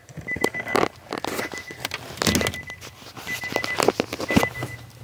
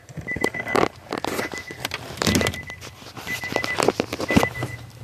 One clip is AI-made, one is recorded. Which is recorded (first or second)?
first